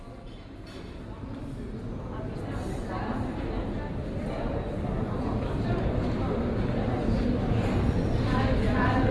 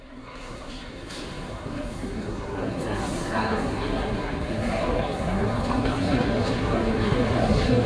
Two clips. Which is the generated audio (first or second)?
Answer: second